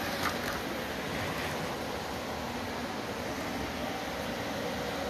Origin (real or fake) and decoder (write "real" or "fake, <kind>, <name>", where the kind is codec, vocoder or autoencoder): real